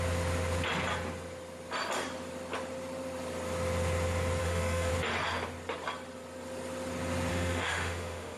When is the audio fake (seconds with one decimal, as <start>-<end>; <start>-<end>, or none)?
4.4-4.9; 7.3-8.4